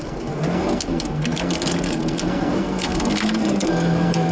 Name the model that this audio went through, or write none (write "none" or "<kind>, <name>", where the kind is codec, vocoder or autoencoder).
codec, SNAC